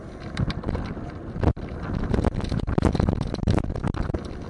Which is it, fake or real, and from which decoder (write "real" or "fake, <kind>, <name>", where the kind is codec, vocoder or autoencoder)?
real